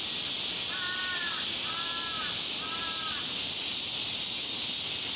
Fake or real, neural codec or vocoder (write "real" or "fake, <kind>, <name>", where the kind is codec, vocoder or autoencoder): real